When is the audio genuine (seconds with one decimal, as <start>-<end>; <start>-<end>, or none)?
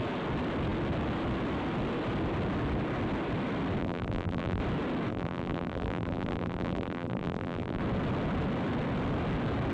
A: 0.0-3.8; 4.6-5.1; 7.8-9.7